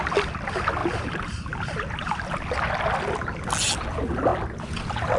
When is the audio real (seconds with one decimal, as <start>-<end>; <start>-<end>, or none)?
0.0-5.2